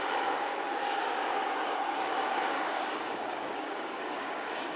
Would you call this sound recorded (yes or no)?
no